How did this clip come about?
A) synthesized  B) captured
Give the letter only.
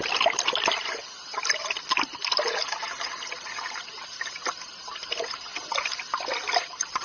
B